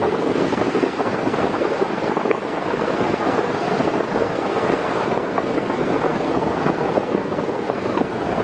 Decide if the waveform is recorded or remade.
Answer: remade